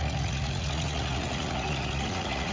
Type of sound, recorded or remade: remade